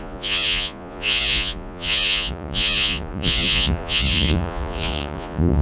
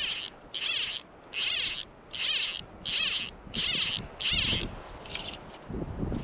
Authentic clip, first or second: second